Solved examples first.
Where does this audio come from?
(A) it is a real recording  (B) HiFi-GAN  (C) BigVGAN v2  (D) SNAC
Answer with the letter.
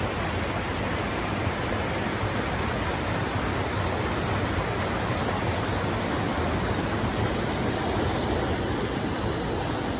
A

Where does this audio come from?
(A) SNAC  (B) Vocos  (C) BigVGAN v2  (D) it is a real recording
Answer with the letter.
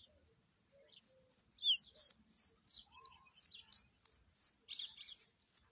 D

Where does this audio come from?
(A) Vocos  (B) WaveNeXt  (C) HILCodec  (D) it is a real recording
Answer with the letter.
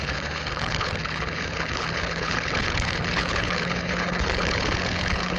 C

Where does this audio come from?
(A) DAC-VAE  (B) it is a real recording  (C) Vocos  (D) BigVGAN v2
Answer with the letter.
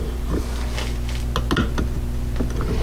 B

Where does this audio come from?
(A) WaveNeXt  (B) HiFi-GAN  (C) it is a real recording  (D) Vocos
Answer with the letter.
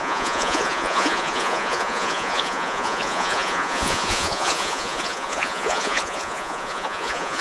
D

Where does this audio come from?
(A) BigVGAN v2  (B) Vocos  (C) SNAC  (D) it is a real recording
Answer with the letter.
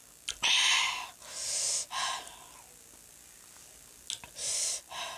D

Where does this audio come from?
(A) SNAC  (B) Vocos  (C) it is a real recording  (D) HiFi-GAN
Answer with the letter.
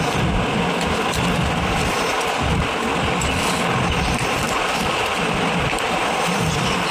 C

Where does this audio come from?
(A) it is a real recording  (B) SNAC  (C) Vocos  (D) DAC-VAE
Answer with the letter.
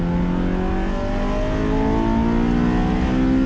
A